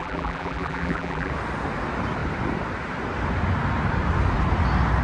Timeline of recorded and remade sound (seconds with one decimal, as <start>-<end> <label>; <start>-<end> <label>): 0.0-1.3 remade; 1.3-5.0 recorded